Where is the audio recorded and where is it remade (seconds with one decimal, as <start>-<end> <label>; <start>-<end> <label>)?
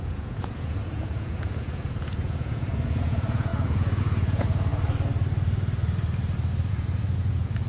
0.0-4.7 remade; 4.7-6.7 recorded; 6.7-7.7 remade